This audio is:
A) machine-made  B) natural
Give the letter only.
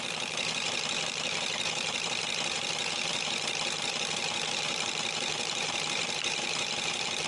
A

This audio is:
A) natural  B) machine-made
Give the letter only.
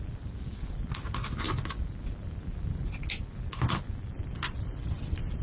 A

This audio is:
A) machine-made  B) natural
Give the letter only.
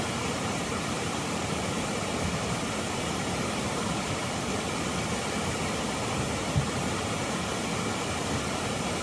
A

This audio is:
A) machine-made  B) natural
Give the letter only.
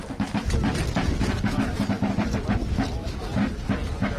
B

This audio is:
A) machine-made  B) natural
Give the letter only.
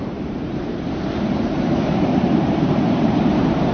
A